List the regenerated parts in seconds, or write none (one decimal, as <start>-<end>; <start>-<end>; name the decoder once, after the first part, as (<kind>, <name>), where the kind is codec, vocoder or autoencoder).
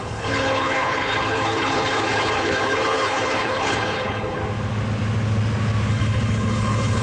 0.0-4.4 (codec, HILCodec); 5.9-7.0